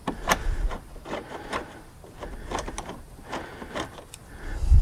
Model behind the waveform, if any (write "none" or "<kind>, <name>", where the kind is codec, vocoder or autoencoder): none